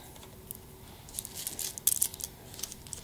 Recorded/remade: recorded